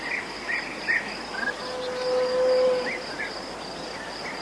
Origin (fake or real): real